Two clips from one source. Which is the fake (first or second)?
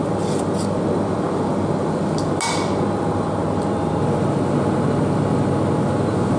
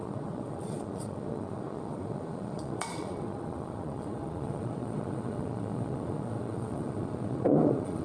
second